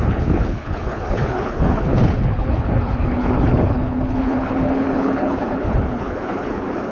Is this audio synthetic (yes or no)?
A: yes